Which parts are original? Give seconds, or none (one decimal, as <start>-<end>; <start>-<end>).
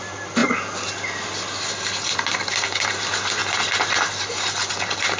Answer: 0.0-5.2